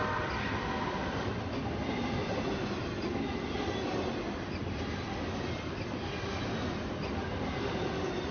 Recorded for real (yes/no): yes